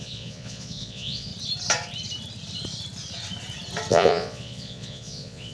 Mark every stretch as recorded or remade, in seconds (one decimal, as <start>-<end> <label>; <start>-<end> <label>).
0.0-1.3 remade; 1.3-3.9 recorded; 3.9-5.5 remade

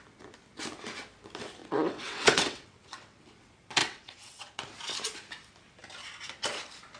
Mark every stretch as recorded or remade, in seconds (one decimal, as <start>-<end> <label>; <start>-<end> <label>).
0.0-1.6 recorded; 1.6-3.2 remade; 3.2-3.8 recorded; 3.8-4.6 remade; 4.6-7.0 recorded

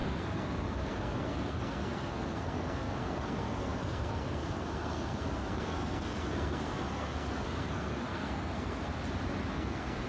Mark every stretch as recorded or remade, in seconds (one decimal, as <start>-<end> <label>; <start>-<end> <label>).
0.0-8.9 remade; 8.9-9.5 recorded; 9.5-10.1 remade

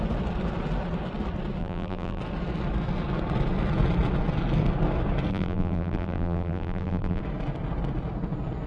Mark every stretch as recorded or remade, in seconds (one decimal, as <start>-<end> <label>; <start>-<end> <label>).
0.0-1.6 recorded; 1.6-2.2 remade; 2.2-5.3 recorded; 5.3-7.2 remade; 7.2-8.7 recorded

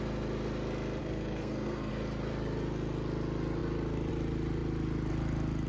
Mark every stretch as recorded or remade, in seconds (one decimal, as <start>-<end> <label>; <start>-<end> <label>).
0.0-1.0 recorded; 1.0-1.9 remade; 1.9-5.7 recorded

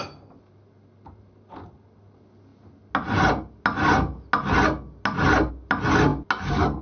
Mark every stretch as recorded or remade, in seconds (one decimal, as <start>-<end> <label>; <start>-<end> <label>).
0.0-6.8 recorded

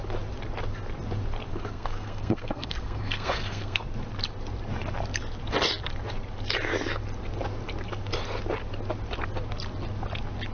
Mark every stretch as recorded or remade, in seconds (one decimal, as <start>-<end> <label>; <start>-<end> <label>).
0.0-1.5 recorded; 1.5-3.8 remade; 3.8-10.5 recorded